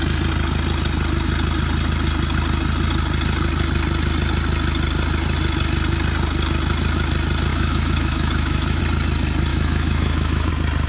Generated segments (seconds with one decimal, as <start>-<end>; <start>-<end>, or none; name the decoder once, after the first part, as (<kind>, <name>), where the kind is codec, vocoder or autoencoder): 7.5-8.8 (autoencoder, DAC-VAE); 9.5-10.5